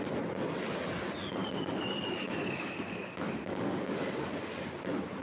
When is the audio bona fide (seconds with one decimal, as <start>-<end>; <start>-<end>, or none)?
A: 0.0-1.4; 4.3-5.2

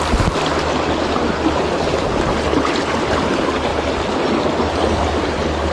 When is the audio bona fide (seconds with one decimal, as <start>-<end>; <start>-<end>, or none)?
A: 0.0-5.7